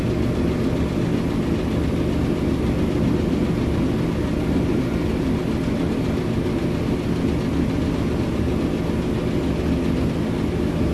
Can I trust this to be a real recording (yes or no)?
yes